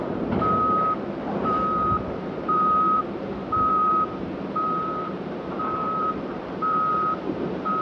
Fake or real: fake